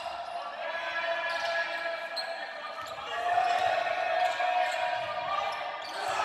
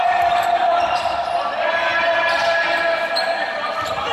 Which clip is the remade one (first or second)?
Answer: second